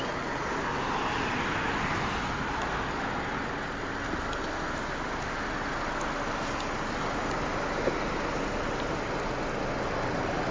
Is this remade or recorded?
recorded